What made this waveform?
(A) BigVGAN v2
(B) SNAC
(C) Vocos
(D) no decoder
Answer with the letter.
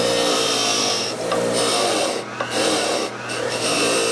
D